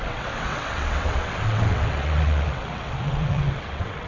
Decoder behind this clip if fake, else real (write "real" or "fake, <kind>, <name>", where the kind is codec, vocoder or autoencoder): fake, vocoder, WaveNeXt